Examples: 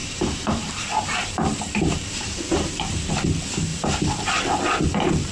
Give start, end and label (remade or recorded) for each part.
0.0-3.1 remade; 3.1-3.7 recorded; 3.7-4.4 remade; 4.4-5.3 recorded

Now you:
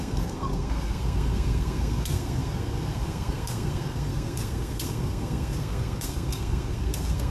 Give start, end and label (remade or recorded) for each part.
0.0-7.3 remade

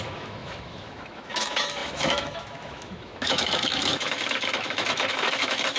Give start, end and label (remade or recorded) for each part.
0.0-5.8 remade

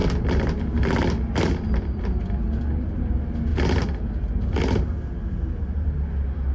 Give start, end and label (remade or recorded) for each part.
0.0-6.5 recorded

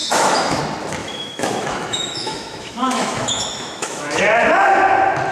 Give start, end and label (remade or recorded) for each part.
0.0-0.6 remade; 0.6-1.0 recorded; 1.0-4.2 remade; 4.2-5.3 recorded

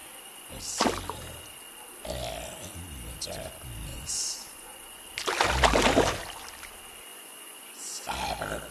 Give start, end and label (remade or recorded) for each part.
0.0-0.6 remade; 0.6-3.9 recorded; 3.9-5.0 remade; 5.0-7.1 recorded; 7.1-8.0 remade; 8.0-8.7 recorded

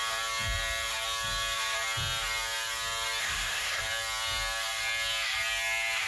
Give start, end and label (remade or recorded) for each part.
0.0-3.2 recorded; 3.2-3.8 remade; 3.8-6.1 recorded